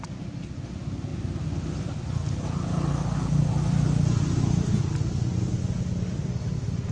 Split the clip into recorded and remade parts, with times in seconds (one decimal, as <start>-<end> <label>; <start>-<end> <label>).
0.0-6.9 recorded